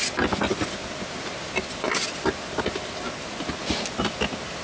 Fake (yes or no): no